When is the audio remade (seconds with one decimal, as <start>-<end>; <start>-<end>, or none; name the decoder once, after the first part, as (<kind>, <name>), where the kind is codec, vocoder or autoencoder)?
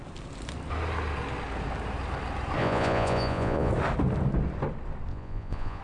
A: 2.6-3.7 (vocoder, Vocos); 5.1-5.8